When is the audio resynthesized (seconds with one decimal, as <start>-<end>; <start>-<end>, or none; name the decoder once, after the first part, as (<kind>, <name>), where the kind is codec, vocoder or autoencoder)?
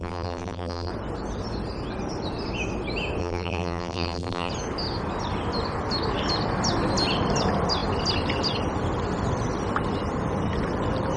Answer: 0.0-0.9 (vocoder, BigVGAN v2); 3.2-4.5